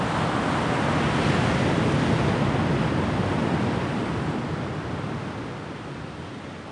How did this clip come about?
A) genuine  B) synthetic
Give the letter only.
A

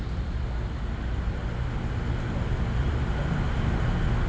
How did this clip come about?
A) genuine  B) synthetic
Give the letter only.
A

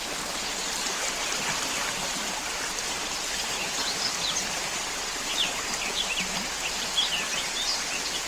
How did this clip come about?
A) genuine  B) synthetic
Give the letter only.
A